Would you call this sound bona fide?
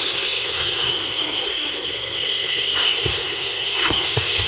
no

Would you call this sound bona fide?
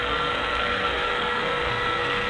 no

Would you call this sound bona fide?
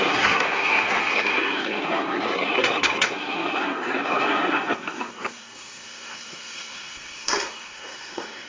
no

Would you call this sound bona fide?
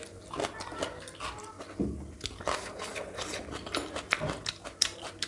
yes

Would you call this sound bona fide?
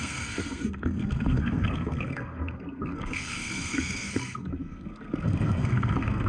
no